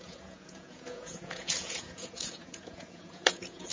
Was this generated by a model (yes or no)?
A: yes